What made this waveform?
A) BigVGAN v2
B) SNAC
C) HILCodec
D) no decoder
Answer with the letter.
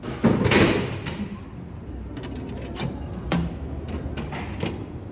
D